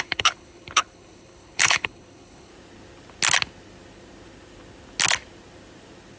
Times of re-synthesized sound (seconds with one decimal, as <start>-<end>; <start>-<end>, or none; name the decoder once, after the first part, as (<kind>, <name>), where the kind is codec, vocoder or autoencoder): 0.0-2.5 (codec, HILCodec)